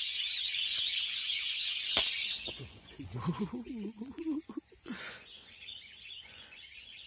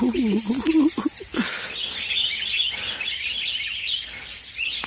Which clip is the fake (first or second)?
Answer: first